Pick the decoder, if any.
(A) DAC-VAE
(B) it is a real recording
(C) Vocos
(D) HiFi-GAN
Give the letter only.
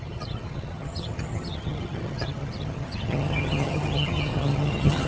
D